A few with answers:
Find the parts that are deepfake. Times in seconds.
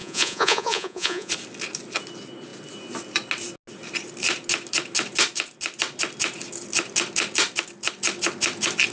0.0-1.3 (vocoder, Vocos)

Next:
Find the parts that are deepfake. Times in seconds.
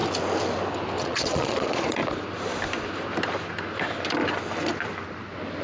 1.0-2.0 (vocoder, Vocos)